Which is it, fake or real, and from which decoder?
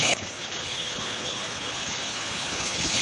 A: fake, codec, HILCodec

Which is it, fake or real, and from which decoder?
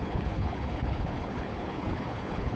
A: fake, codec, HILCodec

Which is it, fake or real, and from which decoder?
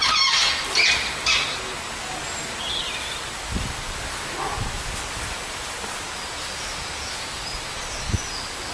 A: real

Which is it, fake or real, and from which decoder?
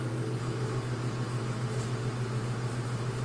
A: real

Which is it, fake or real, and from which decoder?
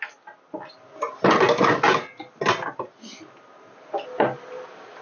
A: real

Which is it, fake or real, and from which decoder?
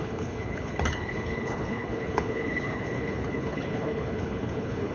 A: fake, codec, HILCodec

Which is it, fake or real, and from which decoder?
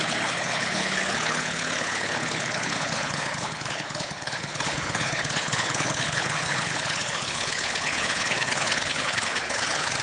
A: fake, codec, HILCodec